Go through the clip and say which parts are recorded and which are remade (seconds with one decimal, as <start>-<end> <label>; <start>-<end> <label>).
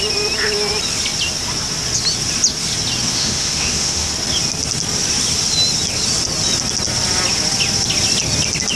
0.0-3.1 recorded; 3.1-4.1 remade; 4.1-8.8 recorded